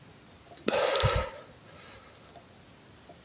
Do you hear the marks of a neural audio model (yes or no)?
no